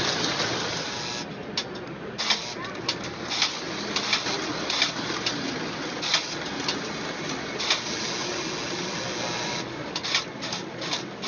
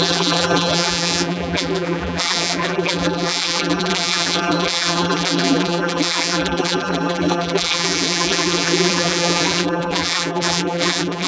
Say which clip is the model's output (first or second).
second